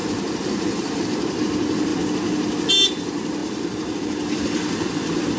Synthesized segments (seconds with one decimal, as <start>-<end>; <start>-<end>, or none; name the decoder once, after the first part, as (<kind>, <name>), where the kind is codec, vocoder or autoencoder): 0.0-1.9 (vocoder, BigVGAN v2); 2.7-5.4